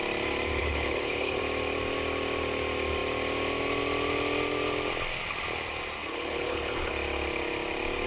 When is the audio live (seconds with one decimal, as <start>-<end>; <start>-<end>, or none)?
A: 0.0-0.6; 1.4-6.0; 6.9-8.1